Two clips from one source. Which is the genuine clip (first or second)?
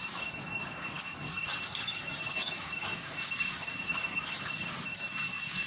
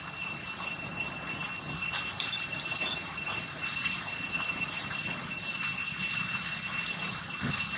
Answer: second